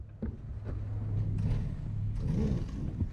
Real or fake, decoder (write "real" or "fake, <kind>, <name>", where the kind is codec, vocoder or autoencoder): real